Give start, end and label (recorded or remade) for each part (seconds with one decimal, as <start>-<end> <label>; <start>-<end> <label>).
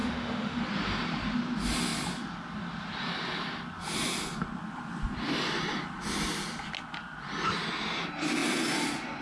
0.0-0.6 remade; 0.6-9.2 recorded